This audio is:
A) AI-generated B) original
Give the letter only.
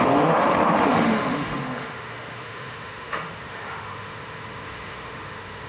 A